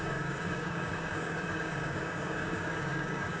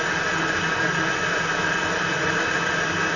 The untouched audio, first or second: second